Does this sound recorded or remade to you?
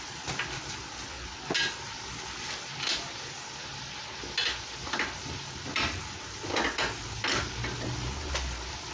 recorded